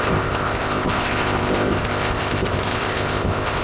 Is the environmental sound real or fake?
fake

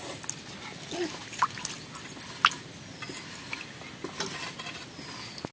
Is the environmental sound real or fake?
real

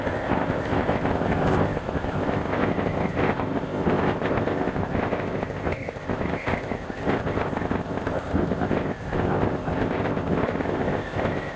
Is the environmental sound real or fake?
fake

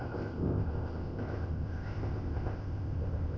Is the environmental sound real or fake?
fake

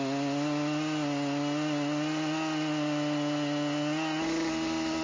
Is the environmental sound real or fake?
real